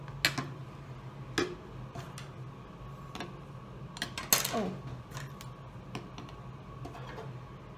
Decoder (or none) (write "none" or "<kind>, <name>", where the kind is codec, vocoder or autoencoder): none